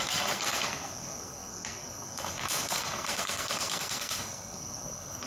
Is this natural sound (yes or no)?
no